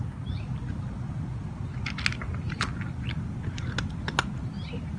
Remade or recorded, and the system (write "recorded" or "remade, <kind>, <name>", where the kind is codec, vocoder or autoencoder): recorded